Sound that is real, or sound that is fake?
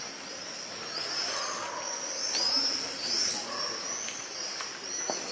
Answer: real